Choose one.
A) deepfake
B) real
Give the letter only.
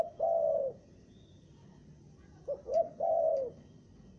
B